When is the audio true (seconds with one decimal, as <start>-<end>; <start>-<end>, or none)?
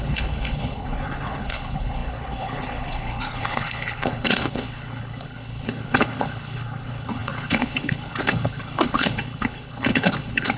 none